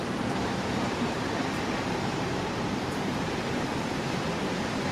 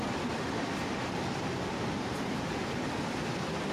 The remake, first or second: first